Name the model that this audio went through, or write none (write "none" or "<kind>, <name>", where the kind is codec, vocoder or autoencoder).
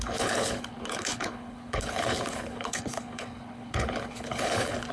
codec, HILCodec